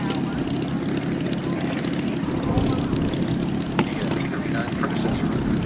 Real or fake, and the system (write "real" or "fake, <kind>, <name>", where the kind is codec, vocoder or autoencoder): real